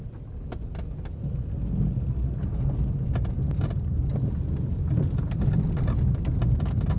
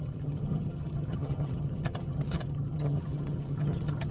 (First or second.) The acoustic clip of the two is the first